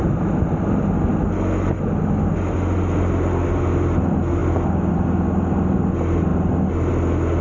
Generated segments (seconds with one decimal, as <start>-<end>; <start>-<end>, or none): none